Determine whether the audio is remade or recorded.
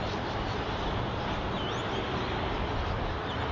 recorded